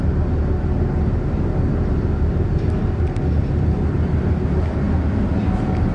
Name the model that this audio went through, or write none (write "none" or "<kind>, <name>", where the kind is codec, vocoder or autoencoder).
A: none